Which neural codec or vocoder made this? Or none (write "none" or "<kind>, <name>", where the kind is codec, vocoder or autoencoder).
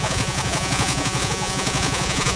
vocoder, Vocos